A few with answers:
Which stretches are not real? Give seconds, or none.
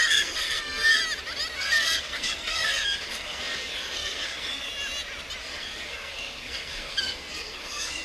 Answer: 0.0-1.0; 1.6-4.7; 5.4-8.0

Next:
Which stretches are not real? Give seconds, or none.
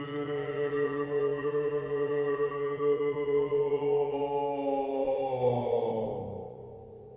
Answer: 0.0-4.2; 4.9-7.2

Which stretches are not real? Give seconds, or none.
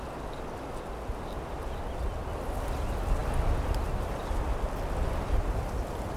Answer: none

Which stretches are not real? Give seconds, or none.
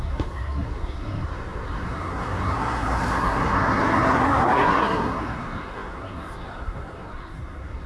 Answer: 0.0-7.9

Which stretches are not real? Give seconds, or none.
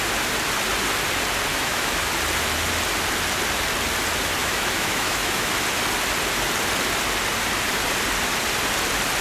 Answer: 1.5-2.1; 4.4-5.5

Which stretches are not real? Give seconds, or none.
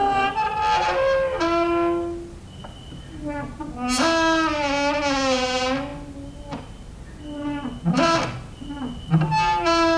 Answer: none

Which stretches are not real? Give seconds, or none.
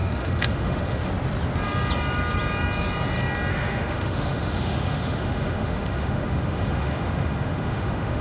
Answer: 0.0-1.1; 3.5-8.2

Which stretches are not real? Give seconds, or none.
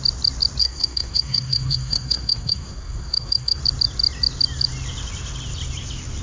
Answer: 0.6-3.6